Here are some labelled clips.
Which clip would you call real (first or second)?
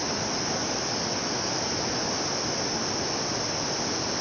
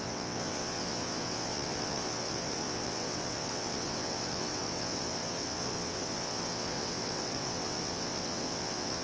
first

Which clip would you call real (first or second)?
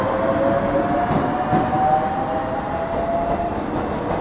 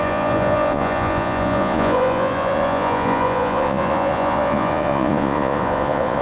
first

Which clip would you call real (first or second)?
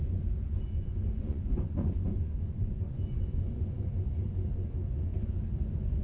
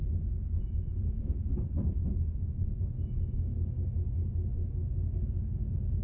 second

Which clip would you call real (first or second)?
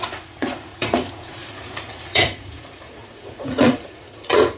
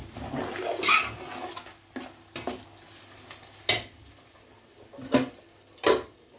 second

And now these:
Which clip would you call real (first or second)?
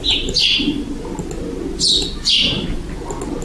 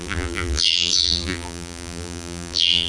first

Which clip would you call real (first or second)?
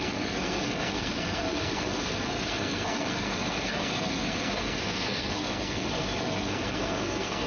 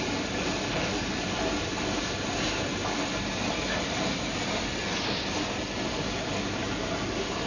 second